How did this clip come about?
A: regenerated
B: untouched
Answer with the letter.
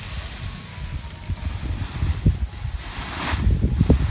B